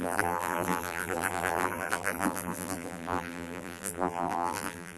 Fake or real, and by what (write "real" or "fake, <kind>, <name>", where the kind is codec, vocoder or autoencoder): fake, vocoder, BigVGAN v2